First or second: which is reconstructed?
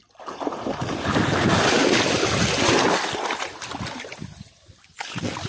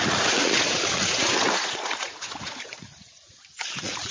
second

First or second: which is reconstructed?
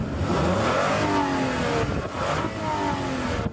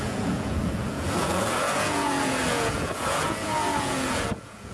second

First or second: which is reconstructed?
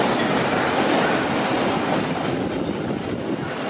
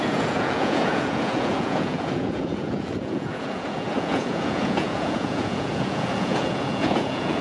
second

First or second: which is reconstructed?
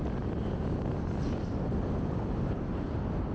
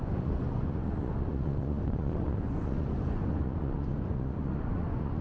second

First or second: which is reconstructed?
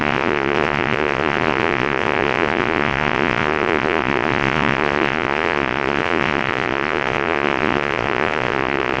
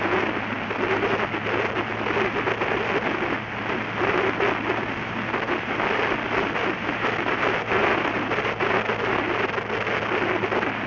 first